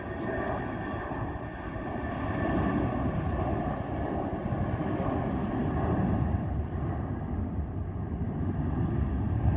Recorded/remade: recorded